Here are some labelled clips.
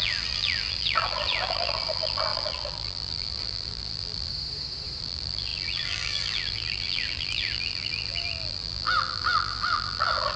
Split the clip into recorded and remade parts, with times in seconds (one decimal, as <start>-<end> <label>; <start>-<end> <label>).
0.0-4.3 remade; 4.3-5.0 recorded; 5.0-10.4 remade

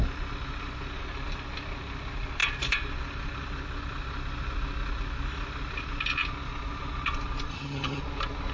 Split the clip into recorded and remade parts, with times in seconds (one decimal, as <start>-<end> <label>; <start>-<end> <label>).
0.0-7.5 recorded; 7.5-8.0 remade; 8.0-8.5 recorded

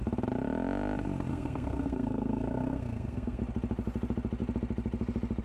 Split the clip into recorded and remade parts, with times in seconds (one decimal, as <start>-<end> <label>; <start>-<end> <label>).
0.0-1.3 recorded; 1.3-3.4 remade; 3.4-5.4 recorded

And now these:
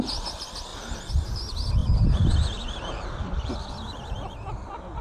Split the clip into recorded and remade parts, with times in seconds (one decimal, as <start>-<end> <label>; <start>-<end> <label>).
0.0-1.8 recorded; 1.8-2.6 remade; 2.6-3.2 recorded; 3.2-4.1 remade; 4.1-5.0 recorded